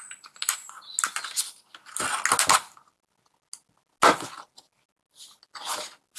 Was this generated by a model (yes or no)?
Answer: no